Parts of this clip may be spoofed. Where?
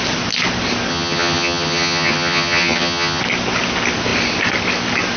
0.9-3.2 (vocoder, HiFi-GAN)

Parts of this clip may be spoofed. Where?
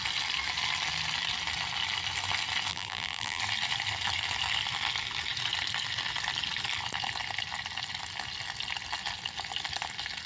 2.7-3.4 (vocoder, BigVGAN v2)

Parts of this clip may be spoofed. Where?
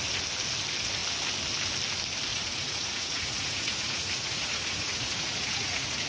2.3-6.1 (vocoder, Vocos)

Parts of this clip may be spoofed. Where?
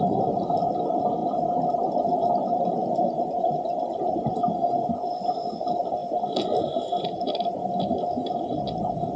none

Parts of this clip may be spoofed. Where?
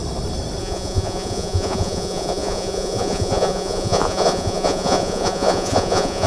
0.6-6.3 (vocoder, Vocos)